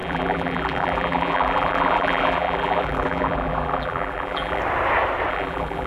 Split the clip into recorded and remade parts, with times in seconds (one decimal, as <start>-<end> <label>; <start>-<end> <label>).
0.0-4.6 remade; 4.6-5.3 recorded; 5.3-5.9 remade